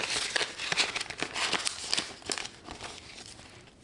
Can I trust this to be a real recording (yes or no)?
yes